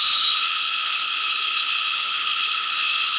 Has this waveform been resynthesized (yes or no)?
yes